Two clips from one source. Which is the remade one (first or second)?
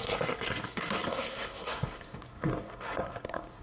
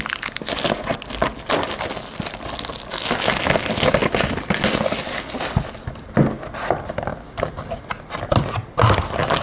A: first